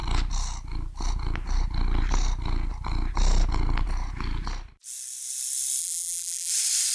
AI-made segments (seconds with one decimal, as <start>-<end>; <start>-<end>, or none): 5.8-6.5